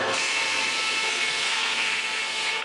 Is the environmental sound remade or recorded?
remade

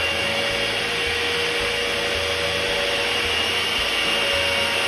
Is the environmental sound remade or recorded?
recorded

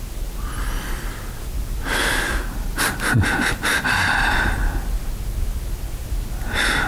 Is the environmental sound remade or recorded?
recorded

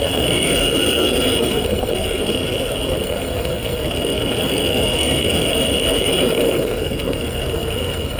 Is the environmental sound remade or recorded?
remade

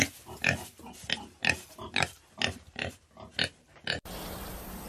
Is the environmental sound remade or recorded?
recorded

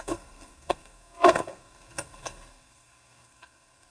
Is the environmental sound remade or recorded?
remade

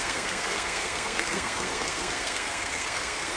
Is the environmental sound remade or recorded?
remade